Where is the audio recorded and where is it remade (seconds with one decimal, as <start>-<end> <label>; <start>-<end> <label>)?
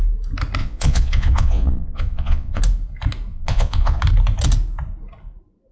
0.0-0.6 recorded; 0.6-2.6 remade; 2.6-3.3 recorded; 3.3-4.0 remade; 4.0-5.7 recorded